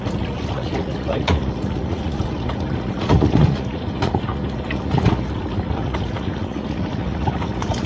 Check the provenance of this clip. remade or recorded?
remade